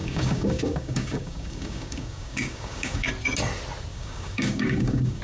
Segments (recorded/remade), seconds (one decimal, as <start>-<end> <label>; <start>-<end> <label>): 0.0-3.1 remade; 3.1-3.9 recorded; 3.9-5.2 remade